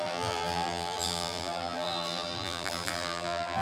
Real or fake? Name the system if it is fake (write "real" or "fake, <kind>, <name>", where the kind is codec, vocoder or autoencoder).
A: fake, vocoder, BigVGAN v2